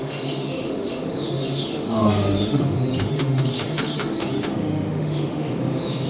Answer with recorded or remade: remade